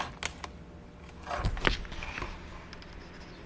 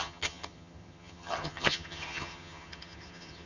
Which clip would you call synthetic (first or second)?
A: second